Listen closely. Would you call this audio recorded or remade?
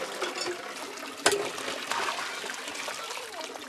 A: recorded